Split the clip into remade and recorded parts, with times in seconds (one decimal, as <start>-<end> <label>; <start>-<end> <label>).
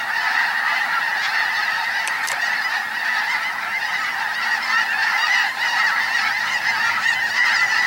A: 0.0-1.6 recorded; 1.6-2.8 remade; 2.8-5.0 recorded; 5.0-5.8 remade; 5.8-7.9 recorded